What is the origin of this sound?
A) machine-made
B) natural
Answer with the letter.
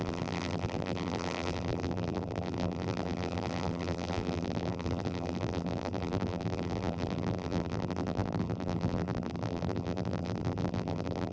A